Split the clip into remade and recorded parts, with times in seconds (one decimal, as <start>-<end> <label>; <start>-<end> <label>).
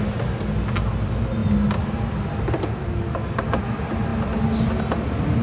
0.0-5.4 recorded